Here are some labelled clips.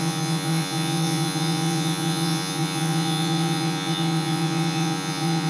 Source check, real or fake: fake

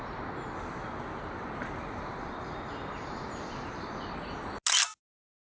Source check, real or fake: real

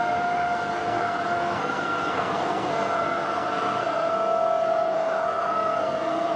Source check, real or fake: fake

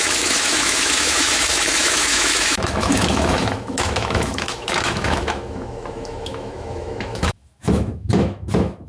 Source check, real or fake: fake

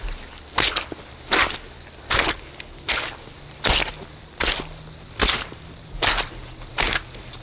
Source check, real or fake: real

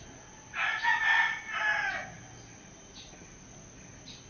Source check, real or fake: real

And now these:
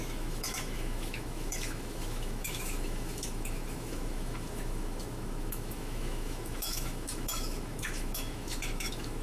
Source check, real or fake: fake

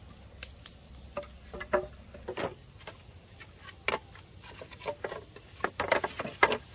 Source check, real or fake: real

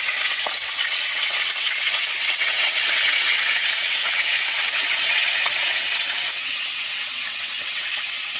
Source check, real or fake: fake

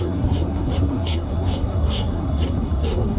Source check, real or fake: fake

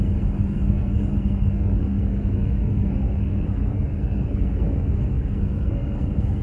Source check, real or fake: fake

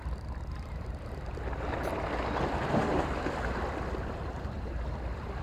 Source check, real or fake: real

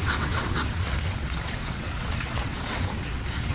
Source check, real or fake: fake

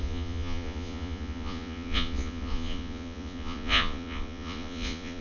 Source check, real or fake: fake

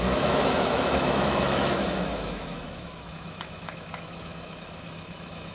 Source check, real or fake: fake